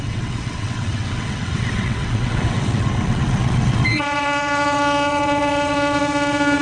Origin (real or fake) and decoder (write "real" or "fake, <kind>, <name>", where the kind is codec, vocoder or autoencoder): fake, vocoder, WaveNeXt